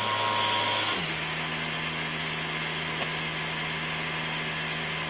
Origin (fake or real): real